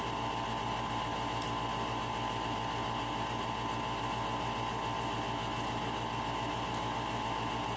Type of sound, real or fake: real